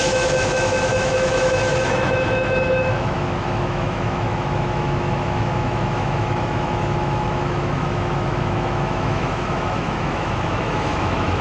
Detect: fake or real fake